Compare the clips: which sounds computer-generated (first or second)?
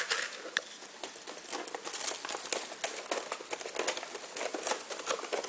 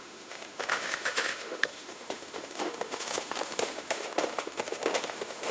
second